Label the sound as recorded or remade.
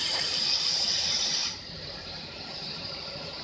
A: remade